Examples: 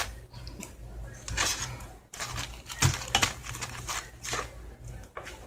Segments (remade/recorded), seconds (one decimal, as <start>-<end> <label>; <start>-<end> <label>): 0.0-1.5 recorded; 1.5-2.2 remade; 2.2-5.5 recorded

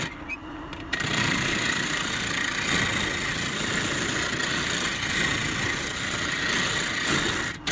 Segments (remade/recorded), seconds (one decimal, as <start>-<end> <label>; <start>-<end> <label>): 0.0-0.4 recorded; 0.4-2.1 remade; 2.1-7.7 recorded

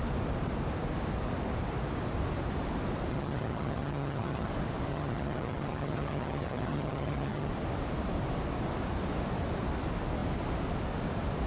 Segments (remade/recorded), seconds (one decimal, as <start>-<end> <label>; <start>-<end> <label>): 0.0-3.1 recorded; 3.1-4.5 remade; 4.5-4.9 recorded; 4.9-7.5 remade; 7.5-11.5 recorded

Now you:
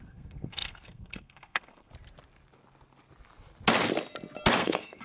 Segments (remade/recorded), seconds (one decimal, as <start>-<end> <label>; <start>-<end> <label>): 0.0-1.9 remade; 1.9-4.6 recorded; 4.6-5.0 remade

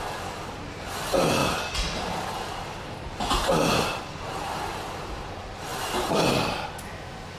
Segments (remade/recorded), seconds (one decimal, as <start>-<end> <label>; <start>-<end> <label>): 0.0-1.4 recorded; 1.4-4.1 remade; 4.1-5.7 recorded; 5.7-6.3 remade; 6.3-7.4 recorded

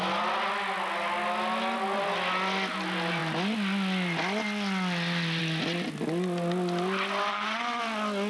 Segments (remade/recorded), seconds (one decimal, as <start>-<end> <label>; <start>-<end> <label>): 0.0-7.3 recorded; 7.3-7.8 remade; 7.8-8.3 recorded